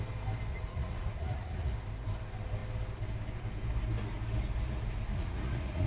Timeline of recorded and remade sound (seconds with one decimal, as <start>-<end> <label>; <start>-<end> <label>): 0.0-0.5 recorded; 0.5-1.7 remade; 1.7-5.1 recorded; 5.1-5.9 remade